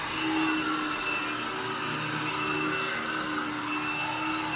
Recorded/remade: recorded